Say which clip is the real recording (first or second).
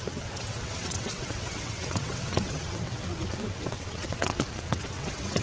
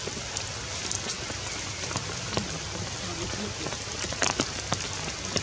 second